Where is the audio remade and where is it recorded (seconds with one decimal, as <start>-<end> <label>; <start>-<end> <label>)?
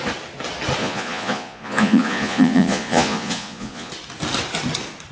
0.0-0.8 recorded; 0.8-3.9 remade; 3.9-5.1 recorded